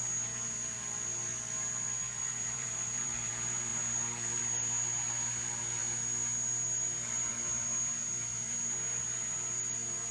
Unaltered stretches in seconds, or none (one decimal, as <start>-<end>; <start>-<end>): 0.0-2.0; 3.3-10.1

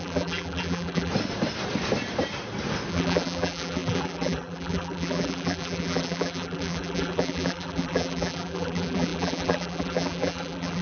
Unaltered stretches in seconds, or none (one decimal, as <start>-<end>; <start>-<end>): 1.1-2.9

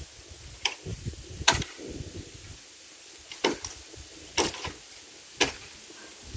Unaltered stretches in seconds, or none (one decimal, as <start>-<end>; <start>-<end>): 0.0-0.9; 4.7-6.4

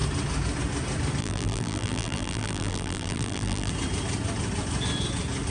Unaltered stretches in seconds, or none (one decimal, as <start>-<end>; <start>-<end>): 0.0-1.2; 3.7-5.5